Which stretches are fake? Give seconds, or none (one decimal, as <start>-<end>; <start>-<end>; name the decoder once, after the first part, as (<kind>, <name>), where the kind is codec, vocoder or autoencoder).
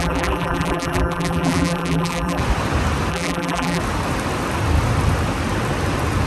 0.0-2.4 (vocoder, BigVGAN v2); 3.1-3.8